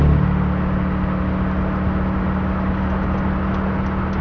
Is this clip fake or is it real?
real